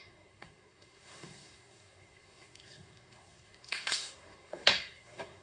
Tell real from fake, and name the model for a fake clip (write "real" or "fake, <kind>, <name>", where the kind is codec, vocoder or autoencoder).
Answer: fake, codec, SNAC